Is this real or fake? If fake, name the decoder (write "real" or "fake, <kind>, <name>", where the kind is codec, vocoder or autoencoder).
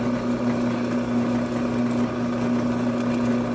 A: real